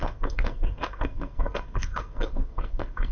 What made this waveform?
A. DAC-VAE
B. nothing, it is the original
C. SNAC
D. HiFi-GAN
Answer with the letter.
C